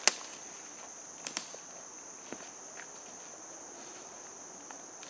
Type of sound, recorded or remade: recorded